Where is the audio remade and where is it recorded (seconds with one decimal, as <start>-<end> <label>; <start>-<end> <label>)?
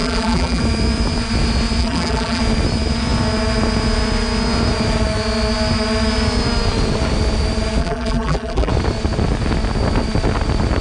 0.0-0.6 remade; 0.6-1.8 recorded; 1.8-2.4 remade; 2.4-7.8 recorded; 7.8-8.7 remade; 8.7-10.8 recorded